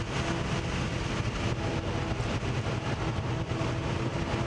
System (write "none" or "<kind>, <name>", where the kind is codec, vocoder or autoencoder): none